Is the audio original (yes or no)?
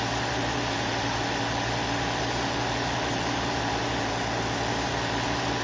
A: no